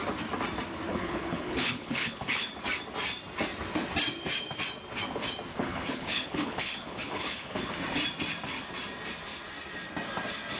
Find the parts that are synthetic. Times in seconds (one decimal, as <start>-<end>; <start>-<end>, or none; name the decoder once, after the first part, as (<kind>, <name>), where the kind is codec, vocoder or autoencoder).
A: 0.9-2.5 (codec, HILCodec); 5.5-7.7